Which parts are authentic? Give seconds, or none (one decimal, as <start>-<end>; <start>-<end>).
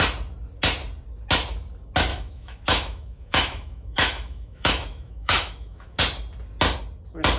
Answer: 0.0-2.1; 6.0-7.4